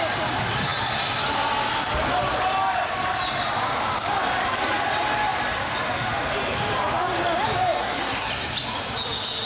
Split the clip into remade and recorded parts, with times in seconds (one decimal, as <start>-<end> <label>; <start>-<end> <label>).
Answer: 0.0-7.8 recorded; 7.8-8.3 remade; 8.3-9.5 recorded